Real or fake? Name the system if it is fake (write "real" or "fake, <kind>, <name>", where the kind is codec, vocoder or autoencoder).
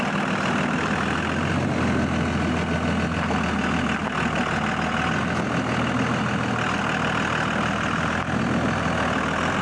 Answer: real